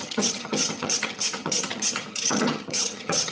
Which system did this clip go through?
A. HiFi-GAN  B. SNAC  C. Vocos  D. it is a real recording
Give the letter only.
A